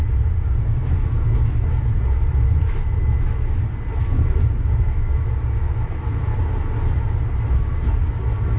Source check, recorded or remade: recorded